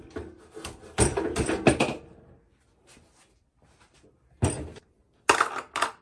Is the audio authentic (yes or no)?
yes